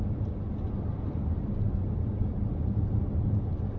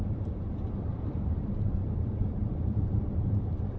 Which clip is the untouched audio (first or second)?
first